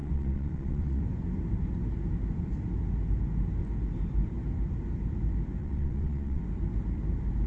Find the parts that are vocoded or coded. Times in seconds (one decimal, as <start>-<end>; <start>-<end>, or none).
0.0-1.0; 5.6-6.4